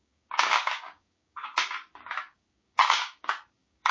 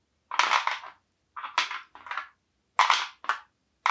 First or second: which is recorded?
second